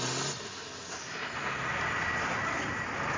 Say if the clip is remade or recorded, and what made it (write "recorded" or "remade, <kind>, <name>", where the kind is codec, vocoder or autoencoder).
recorded